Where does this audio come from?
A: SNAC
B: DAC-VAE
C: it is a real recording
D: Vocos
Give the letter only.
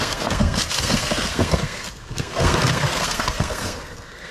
A